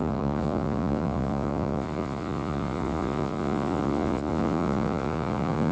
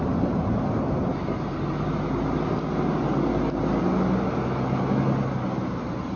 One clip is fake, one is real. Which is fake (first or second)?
first